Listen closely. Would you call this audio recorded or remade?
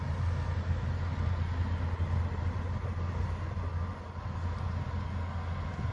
recorded